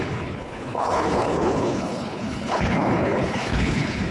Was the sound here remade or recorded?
remade